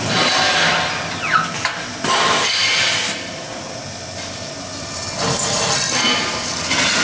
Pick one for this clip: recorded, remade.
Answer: recorded